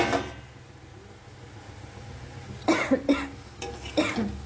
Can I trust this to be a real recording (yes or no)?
yes